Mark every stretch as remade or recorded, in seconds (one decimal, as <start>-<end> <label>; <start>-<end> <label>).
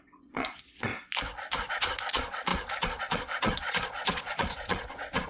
0.0-0.9 remade; 0.9-1.7 recorded; 1.7-5.3 remade